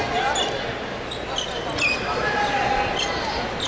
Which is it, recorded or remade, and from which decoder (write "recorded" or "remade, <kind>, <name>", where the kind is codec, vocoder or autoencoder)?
recorded